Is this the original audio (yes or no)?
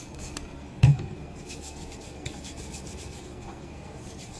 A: no